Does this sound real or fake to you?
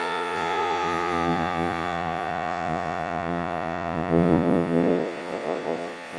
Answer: fake